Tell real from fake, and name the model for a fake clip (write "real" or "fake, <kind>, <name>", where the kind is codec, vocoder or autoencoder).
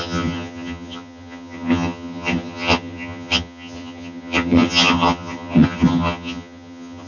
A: fake, vocoder, HiFi-GAN